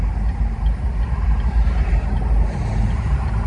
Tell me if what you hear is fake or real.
real